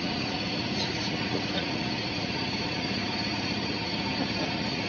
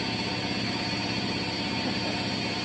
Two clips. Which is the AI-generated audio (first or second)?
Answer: first